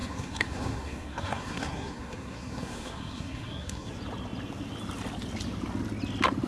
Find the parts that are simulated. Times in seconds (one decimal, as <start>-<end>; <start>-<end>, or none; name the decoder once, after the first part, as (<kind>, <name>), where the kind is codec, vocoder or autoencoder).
0.0-3.9 (codec, SNAC)